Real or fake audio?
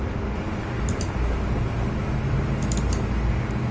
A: real